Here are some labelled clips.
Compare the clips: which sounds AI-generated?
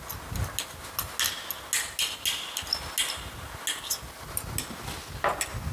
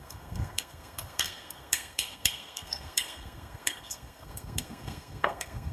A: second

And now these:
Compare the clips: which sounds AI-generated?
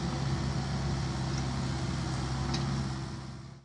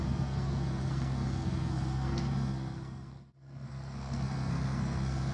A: second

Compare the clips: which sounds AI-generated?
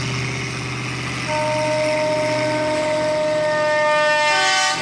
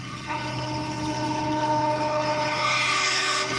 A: second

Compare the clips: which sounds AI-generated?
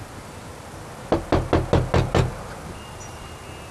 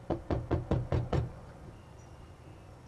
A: second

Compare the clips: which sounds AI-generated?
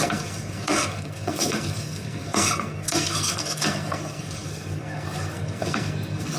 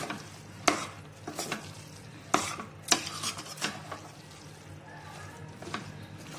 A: first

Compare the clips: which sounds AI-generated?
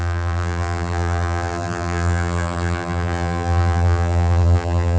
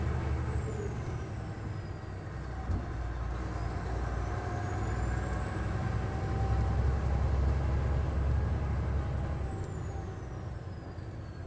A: first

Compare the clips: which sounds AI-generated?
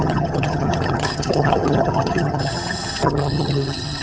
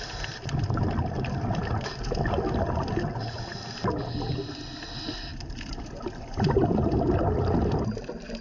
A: first